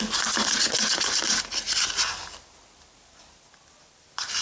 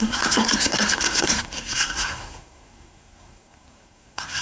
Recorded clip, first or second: first